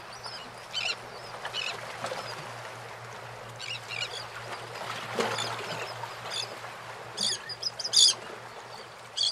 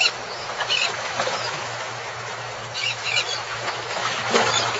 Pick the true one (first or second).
first